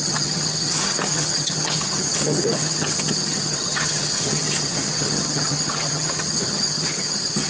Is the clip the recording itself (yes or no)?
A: no